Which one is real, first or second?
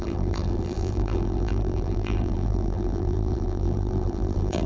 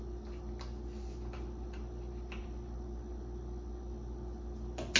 second